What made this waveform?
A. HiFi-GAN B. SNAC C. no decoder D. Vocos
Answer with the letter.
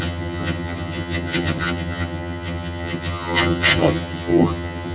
A